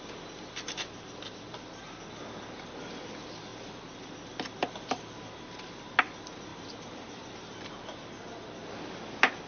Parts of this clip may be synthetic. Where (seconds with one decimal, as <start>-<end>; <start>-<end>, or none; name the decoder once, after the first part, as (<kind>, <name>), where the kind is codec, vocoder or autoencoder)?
6.5-7.6 (vocoder, BigVGAN v2)